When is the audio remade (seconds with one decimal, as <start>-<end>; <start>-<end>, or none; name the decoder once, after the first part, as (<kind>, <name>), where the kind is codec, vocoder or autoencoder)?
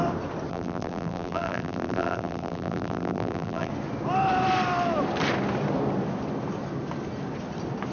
0.5-3.7 (vocoder, BigVGAN v2)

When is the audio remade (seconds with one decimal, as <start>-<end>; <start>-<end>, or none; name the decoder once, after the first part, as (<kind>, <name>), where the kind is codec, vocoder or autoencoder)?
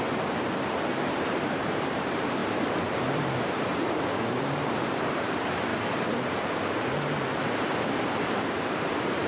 0.0-5.7 (vocoder, BigVGAN v2); 8.5-9.3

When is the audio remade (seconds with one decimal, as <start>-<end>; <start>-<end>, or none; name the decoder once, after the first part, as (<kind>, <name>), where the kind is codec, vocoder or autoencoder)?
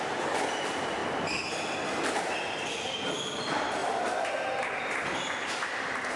3.8-4.8 (vocoder, BigVGAN v2)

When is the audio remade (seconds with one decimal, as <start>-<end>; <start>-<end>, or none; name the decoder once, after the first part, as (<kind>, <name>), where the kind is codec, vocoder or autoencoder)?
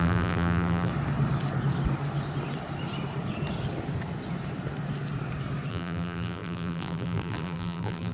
0.0-0.9 (vocoder, BigVGAN v2); 5.7-8.1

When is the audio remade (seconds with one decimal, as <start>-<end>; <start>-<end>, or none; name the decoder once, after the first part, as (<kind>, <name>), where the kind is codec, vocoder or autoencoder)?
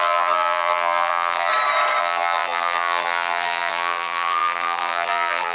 0.0-1.5 (vocoder, BigVGAN v2); 2.0-5.5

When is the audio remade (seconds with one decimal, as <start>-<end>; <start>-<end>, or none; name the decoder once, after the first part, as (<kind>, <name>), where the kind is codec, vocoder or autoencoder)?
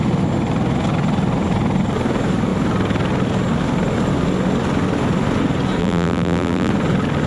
5.8-6.7 (vocoder, BigVGAN v2)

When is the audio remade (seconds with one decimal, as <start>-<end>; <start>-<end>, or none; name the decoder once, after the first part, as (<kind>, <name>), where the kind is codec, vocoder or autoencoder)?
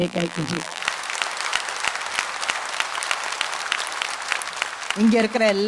0.0-0.8 (vocoder, BigVGAN v2)